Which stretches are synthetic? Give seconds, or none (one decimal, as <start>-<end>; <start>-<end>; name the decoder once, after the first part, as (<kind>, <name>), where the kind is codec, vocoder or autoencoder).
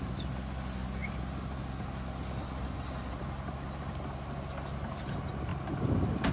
none